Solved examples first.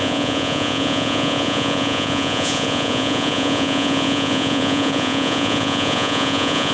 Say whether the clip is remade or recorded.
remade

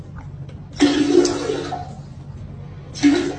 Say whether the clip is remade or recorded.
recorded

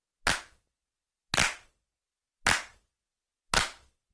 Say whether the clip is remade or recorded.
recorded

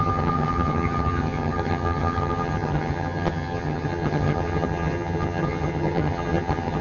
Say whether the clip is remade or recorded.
remade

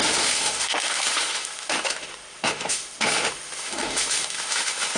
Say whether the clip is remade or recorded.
remade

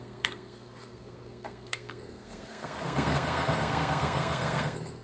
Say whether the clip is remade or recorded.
remade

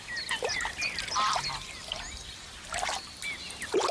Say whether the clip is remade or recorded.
recorded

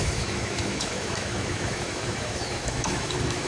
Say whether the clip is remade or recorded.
remade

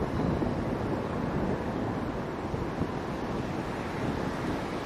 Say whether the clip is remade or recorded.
recorded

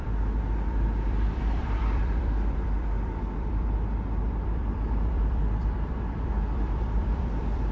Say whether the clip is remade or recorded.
remade